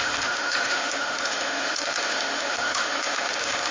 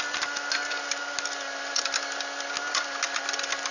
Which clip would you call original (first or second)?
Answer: second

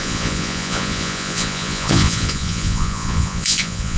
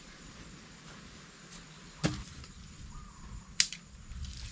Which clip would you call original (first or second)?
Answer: second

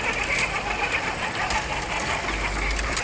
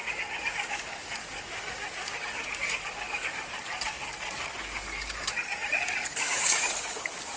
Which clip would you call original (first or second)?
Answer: first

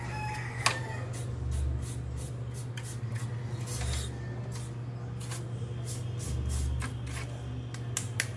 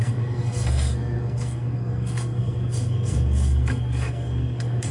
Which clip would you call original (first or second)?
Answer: first